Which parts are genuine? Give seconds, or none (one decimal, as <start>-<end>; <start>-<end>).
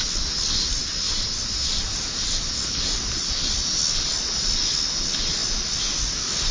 0.0-6.5